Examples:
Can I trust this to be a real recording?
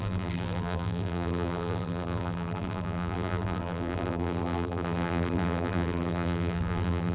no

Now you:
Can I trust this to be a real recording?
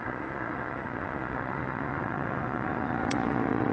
no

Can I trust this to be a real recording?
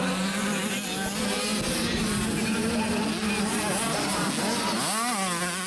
yes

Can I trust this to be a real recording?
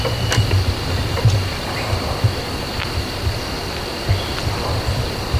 yes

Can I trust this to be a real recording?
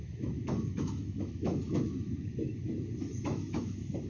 no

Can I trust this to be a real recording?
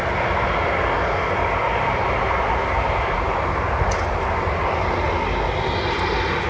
yes